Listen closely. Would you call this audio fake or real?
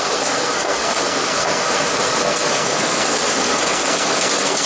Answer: fake